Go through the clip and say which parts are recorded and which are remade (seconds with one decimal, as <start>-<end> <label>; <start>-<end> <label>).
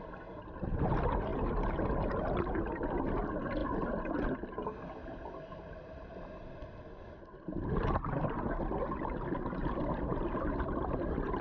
0.0-3.6 recorded; 3.6-7.7 remade; 7.7-9.6 recorded; 9.6-11.4 remade